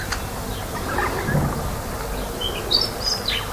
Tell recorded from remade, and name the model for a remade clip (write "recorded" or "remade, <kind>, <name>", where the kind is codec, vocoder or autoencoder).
recorded